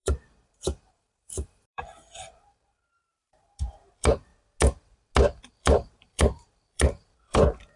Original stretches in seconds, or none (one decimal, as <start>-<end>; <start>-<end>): 4.3-5.4